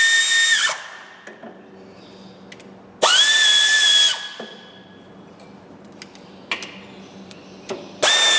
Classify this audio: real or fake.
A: real